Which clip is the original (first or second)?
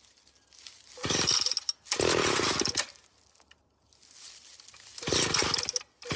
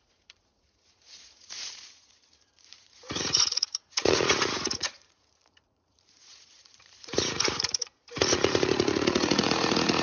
first